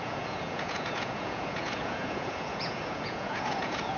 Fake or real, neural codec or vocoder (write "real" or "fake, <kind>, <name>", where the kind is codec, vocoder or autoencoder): fake, vocoder, Vocos